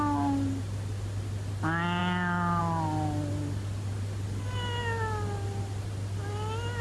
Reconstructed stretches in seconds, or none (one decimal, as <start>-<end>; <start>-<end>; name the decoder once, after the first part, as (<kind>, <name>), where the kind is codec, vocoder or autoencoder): none